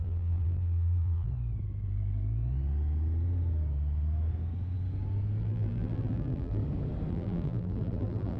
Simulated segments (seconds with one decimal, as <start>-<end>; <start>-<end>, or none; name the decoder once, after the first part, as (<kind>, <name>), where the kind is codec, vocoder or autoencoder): 0.0-1.3 (vocoder, BigVGAN v2); 5.4-6.6; 7.1-8.4